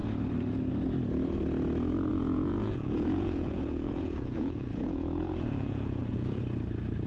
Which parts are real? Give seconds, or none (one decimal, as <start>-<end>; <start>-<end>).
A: 0.0-2.1; 6.4-7.1